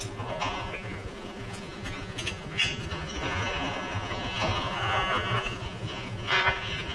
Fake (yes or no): yes